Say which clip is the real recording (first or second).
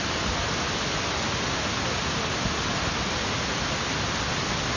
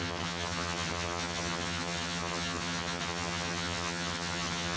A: first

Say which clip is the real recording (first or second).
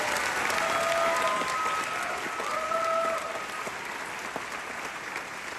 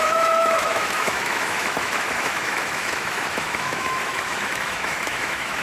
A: first